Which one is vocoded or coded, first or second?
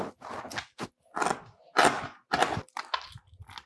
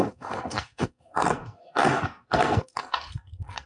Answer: second